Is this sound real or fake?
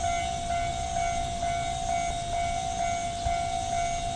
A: real